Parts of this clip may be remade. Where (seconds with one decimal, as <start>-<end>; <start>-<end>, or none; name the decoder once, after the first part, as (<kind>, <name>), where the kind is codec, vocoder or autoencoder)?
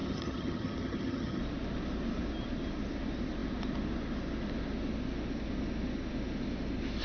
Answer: 0.0-1.4 (vocoder, HiFi-GAN)